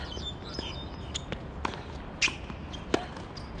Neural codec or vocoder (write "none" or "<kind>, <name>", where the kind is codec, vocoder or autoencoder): none